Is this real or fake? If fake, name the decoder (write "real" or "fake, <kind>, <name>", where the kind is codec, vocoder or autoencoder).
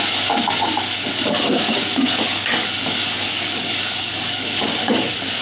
fake, codec, DAC